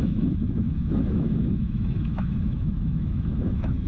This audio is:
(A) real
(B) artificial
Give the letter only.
B